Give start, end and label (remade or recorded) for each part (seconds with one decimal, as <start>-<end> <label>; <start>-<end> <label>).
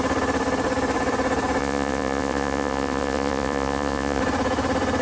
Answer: 0.0-1.6 recorded; 1.6-4.2 remade; 4.2-5.0 recorded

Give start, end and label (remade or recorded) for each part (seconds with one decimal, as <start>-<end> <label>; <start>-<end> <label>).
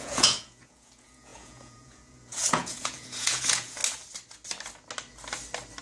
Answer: 0.0-3.8 remade; 3.8-5.8 recorded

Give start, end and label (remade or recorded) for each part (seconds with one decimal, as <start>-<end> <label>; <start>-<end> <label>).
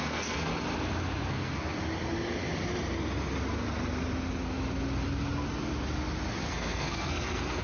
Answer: 0.0-0.5 remade; 0.5-1.3 recorded; 1.3-1.8 remade; 1.8-6.4 recorded; 6.4-7.6 remade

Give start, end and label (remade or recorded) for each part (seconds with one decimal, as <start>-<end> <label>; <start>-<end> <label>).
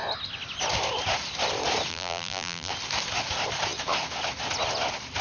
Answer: 0.0-1.9 recorded; 1.9-2.7 remade; 2.7-5.2 recorded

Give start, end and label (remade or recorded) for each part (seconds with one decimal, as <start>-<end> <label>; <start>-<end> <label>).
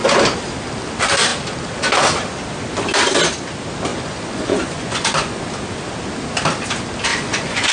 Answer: 0.0-3.9 recorded; 3.9-5.4 remade; 5.4-7.1 recorded; 7.1-7.7 remade